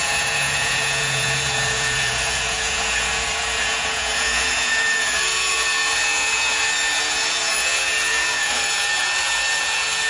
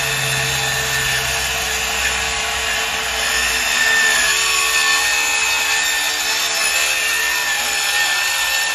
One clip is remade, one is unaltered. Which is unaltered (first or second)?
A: second